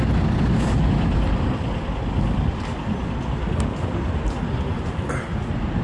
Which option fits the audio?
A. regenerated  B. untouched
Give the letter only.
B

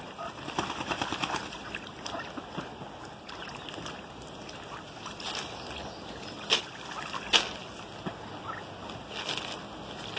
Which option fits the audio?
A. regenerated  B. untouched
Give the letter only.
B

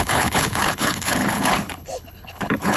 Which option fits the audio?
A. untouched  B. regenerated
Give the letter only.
B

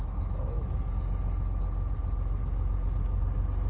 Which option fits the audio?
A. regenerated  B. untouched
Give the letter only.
B